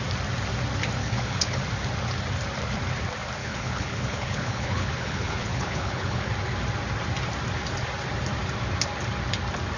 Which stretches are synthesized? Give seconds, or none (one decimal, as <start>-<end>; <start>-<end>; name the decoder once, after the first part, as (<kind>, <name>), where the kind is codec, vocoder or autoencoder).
1.0-1.6 (codec, HILCodec); 3.4-6.3